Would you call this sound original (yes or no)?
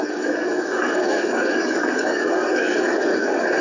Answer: no